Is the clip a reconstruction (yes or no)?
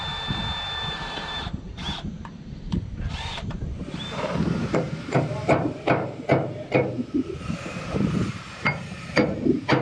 yes